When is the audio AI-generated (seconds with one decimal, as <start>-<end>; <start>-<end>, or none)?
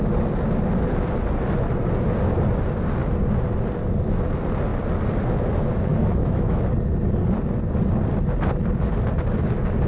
5.9-6.6